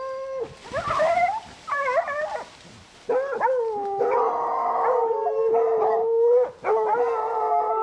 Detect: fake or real real